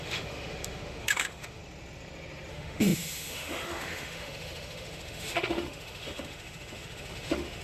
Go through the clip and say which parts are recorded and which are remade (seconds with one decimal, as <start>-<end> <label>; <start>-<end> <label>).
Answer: 0.0-1.6 remade; 1.6-2.5 recorded; 2.5-7.6 remade